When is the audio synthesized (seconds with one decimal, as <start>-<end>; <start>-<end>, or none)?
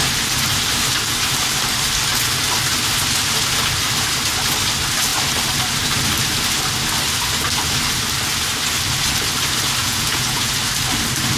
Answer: 9.8-10.5